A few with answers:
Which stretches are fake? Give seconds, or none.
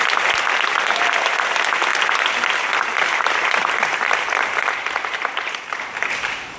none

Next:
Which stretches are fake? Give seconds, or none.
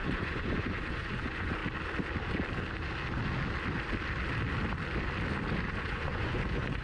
0.0-1.6; 5.7-6.8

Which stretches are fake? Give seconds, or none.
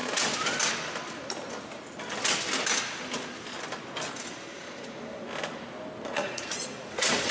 4.5-5.0; 6.0-7.3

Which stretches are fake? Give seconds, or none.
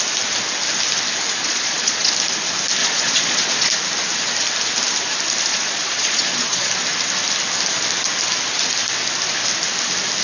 1.4-2.1; 2.8-3.7; 5.5-6.7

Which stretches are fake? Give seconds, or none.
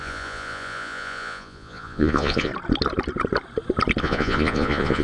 0.0-2.5; 4.0-5.0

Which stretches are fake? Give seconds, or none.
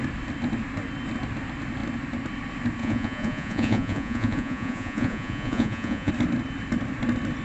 2.8-6.1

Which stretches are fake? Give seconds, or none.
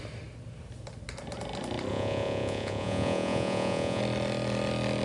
1.9-4.0